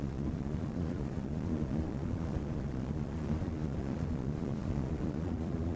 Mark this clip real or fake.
fake